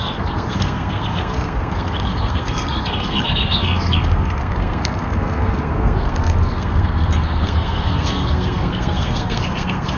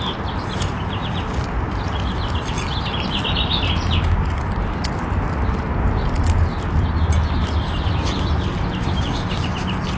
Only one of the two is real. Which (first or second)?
second